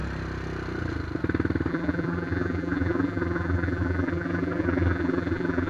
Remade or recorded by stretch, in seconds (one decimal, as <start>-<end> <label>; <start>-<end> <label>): 0.0-1.7 recorded; 1.7-5.7 remade